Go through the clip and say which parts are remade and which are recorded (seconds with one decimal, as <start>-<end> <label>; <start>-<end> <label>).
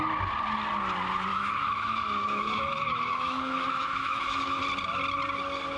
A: 0.0-1.3 recorded; 1.3-4.6 remade; 4.6-5.8 recorded